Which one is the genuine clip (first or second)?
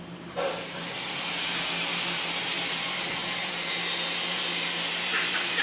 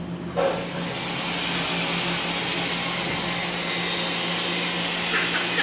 second